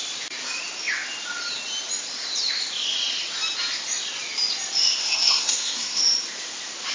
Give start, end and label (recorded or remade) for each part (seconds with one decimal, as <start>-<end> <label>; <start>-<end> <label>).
0.0-5.0 recorded; 5.0-6.0 remade; 6.0-6.9 recorded